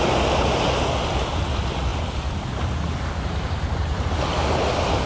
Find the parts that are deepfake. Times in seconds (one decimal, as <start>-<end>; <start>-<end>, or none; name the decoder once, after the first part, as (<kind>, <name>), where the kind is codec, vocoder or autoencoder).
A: none